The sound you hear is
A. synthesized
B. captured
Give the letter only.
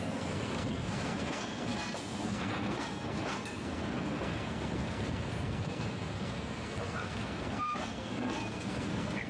A